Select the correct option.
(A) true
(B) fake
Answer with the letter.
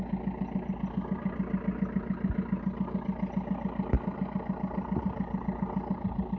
A